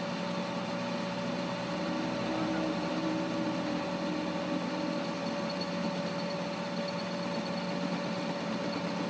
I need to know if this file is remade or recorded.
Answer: recorded